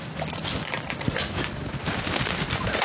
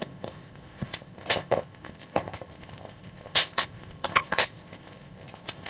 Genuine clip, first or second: first